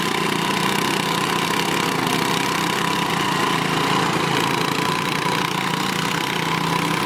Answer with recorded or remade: recorded